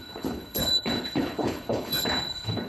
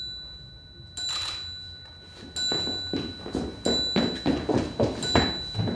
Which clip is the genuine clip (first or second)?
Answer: second